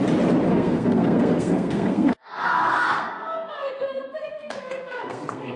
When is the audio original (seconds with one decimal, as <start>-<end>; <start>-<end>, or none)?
0.0-0.5